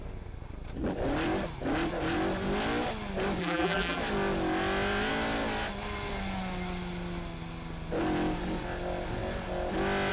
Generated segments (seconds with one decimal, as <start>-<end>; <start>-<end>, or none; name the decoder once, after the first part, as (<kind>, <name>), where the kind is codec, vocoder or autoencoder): 3.4-4.0 (vocoder, BigVGAN v2)